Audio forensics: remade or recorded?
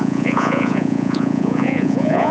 remade